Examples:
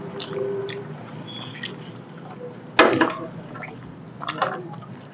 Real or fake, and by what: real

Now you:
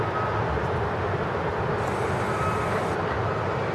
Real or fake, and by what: real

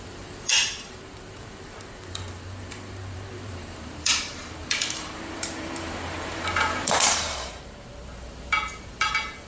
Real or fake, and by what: fake, vocoder, BigVGAN v2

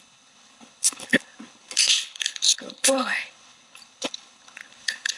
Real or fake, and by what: fake, codec, HILCodec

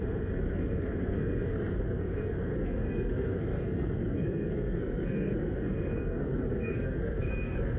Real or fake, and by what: fake, codec, SNAC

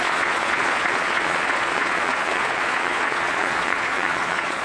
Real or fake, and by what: fake, vocoder, Vocos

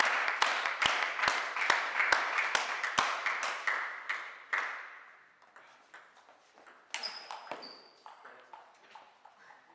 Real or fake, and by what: real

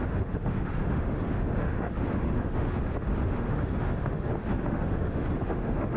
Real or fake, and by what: fake, autoencoder, DAC-VAE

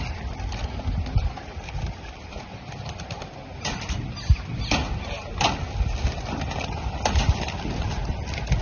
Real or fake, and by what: real